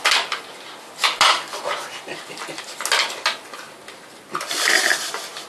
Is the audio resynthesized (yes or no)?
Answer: no